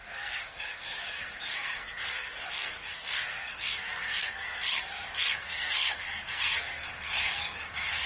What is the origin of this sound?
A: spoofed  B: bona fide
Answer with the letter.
A